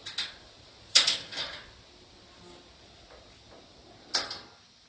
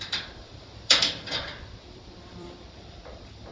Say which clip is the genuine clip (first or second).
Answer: first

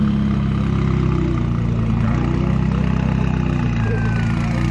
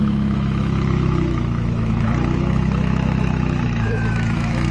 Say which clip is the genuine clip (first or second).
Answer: first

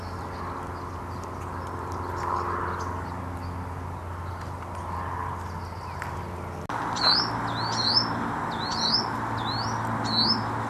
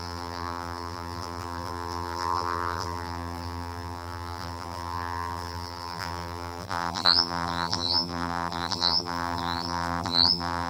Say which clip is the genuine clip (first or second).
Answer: first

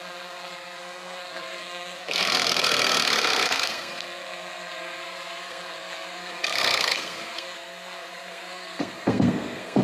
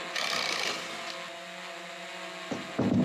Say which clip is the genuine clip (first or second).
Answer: second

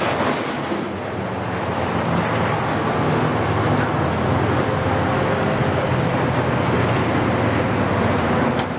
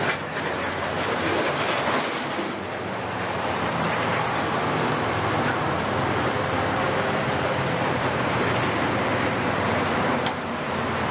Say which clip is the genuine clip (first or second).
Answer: first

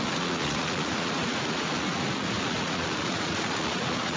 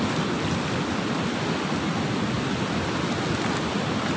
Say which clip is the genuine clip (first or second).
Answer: second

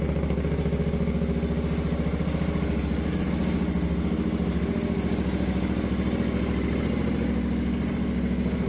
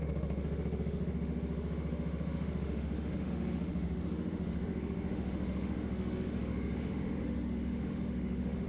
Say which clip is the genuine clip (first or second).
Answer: first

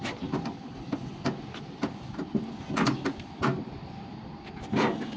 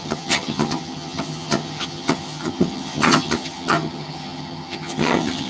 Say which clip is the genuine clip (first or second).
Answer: first